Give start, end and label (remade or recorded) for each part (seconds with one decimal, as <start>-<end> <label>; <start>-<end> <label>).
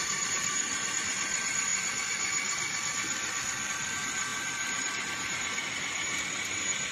0.0-1.7 remade; 1.7-3.7 recorded; 3.7-6.9 remade